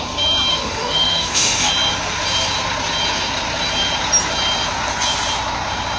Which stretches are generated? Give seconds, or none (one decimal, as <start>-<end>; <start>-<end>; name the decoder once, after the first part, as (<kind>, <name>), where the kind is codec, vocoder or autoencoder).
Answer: 0.5-1.7 (autoencoder, DAC-VAE)